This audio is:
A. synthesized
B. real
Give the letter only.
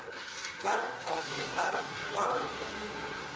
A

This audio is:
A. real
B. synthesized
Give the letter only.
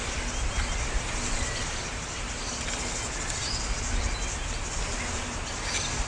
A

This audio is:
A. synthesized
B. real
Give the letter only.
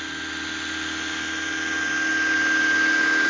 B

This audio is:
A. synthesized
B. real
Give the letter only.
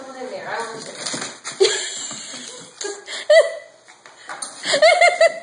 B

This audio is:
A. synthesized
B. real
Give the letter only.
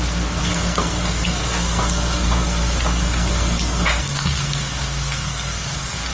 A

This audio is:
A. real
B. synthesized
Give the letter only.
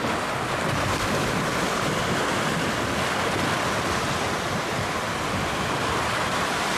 A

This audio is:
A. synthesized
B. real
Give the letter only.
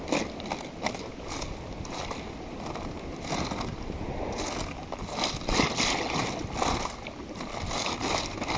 B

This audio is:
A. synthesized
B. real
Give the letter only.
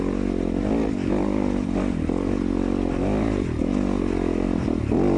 B